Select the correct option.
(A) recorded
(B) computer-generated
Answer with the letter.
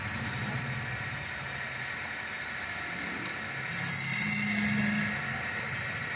A